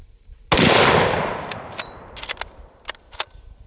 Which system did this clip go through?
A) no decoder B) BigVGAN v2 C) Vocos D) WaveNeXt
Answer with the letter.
A